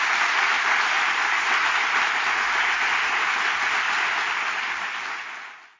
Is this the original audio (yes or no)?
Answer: yes